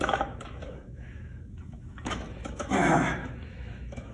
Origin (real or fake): fake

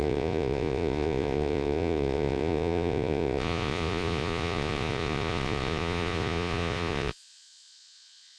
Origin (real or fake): fake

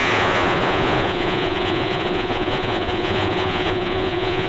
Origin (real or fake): fake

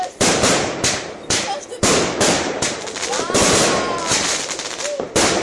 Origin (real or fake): real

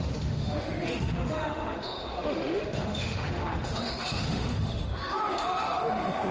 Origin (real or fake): fake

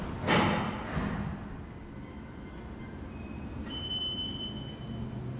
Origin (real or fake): real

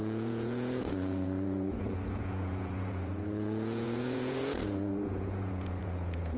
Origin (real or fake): fake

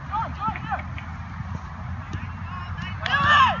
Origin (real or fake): real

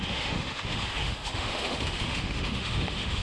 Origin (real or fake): fake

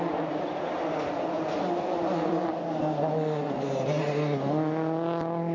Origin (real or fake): real